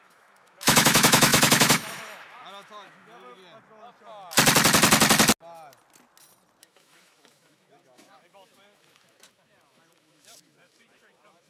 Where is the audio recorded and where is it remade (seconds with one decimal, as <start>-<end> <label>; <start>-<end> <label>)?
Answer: 0.0-3.4 remade; 3.4-6.6 recorded; 6.6-11.5 remade